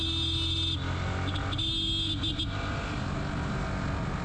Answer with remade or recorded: recorded